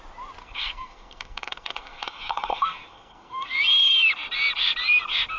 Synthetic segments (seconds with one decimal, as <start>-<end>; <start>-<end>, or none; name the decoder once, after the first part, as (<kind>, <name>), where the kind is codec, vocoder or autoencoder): 0.4-3.6 (codec, SNAC)